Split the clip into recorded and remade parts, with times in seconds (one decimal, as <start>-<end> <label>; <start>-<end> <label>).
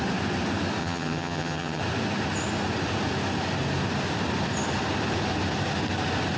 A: 0.0-0.8 recorded; 0.8-1.8 remade; 1.8-6.4 recorded